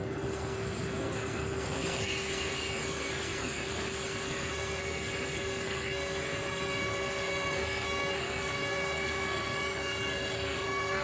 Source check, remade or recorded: remade